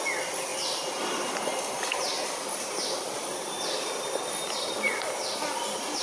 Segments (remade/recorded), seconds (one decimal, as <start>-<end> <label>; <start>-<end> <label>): 0.0-0.5 recorded; 0.5-1.5 remade; 1.5-6.0 recorded